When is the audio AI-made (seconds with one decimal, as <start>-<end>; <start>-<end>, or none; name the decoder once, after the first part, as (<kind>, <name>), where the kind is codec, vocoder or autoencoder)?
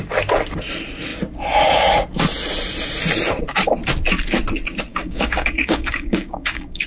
4.9-6.9 (codec, DAC)